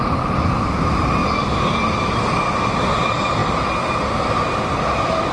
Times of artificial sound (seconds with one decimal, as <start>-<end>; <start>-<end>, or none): none